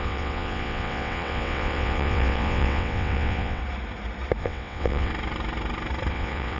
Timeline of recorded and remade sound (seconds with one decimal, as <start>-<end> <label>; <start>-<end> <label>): 0.0-3.6 remade; 3.6-4.4 recorded; 4.4-5.1 remade; 5.1-6.1 recorded; 6.1-6.6 remade